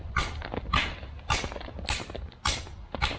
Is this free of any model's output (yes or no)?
yes